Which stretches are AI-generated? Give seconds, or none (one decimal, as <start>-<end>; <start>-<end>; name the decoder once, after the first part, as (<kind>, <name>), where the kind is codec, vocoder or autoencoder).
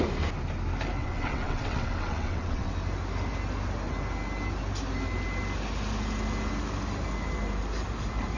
1.0-2.7 (vocoder, WaveNeXt)